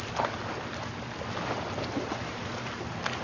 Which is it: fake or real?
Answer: real